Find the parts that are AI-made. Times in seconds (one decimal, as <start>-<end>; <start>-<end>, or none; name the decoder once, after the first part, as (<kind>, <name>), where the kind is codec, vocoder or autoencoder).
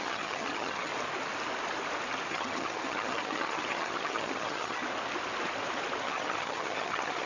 0.0-0.9 (vocoder, HiFi-GAN); 2.3-4.8; 6.0-7.3